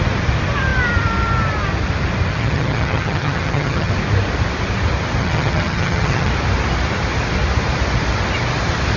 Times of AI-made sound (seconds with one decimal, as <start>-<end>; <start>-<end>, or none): 2.3-3.9; 5.2-6.3